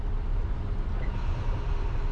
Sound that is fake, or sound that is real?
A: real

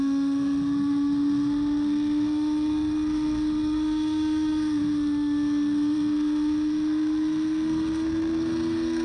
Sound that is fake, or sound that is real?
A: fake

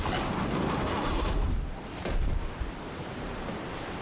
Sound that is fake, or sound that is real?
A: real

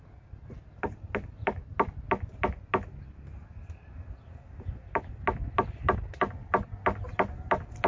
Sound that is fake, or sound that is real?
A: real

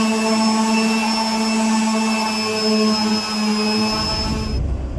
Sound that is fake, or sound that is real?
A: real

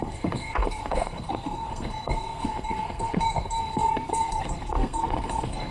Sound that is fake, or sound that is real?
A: fake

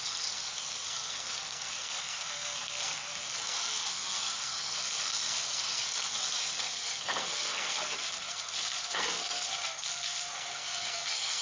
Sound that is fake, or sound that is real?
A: fake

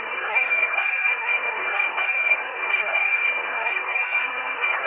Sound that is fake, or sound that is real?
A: fake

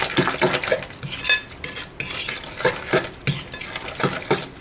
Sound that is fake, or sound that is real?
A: real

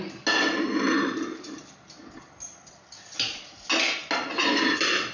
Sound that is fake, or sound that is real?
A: real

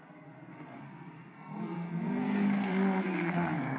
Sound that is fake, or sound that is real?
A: fake